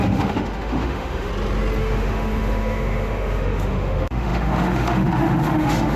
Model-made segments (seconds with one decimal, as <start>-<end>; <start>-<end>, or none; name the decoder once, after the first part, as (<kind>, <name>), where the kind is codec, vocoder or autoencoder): 0.0-1.3 (autoencoder, DAC-VAE); 1.8-6.0